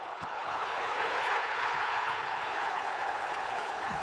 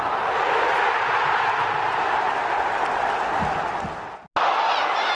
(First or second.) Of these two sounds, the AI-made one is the first